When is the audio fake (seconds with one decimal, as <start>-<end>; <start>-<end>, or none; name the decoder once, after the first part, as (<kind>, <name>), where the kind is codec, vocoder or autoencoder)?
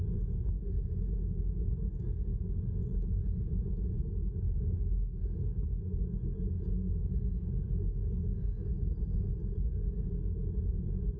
0.0-11.2 (codec, DAC)